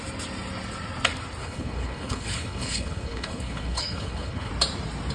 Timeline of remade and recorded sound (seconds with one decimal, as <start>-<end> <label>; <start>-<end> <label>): 0.0-1.4 recorded; 1.4-4.5 remade; 4.5-5.1 recorded